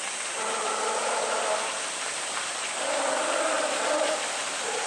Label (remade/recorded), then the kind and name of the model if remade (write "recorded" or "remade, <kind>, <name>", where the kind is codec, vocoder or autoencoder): remade, vocoder, BigVGAN v2